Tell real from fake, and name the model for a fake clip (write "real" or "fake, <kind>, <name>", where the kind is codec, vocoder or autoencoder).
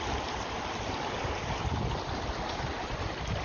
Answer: real